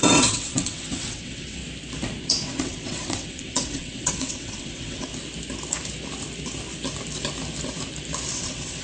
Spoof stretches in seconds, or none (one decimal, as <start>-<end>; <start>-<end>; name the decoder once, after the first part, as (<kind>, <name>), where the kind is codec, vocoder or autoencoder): 0.0-1.6 (vocoder, WaveNeXt); 2.2-5.1; 8.3-8.8